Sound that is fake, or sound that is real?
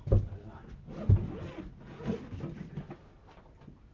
real